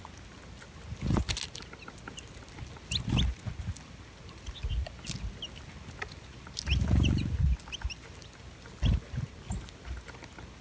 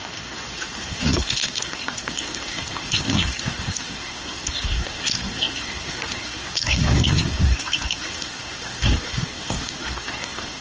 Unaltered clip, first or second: first